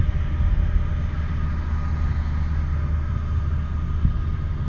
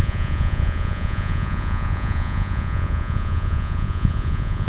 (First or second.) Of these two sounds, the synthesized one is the second